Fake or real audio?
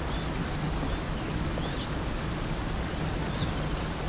real